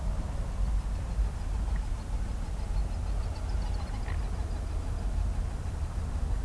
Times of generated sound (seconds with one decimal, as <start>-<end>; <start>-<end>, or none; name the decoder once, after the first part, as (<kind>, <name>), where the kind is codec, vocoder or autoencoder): none